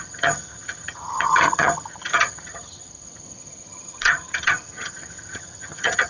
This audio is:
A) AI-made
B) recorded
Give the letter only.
A